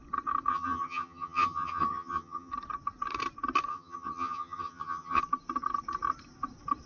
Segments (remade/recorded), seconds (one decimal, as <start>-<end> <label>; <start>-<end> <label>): 0.0-0.5 recorded; 0.5-2.5 remade; 2.5-3.7 recorded; 3.7-5.2 remade; 5.2-6.9 recorded